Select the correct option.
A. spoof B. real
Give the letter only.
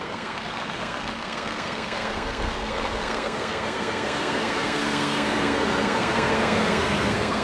A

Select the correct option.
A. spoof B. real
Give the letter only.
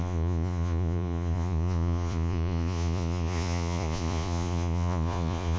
A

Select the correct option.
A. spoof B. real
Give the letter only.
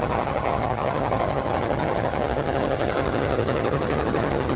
A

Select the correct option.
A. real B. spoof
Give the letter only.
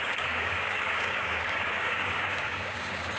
B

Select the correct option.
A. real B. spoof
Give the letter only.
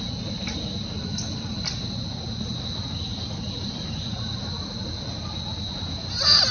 A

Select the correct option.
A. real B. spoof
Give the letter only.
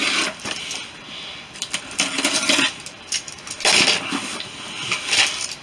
A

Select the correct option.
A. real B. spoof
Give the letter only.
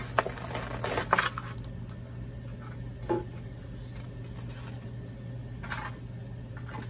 A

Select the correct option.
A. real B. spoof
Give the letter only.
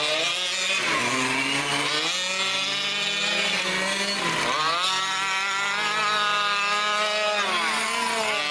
A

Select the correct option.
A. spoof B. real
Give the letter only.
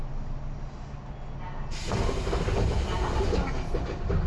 B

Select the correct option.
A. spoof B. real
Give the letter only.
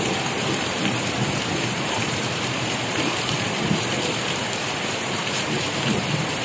A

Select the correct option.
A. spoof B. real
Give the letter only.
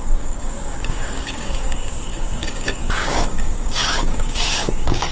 A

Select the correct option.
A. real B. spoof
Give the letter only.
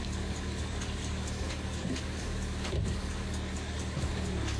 B